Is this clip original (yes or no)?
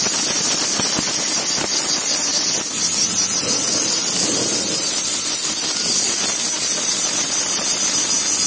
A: yes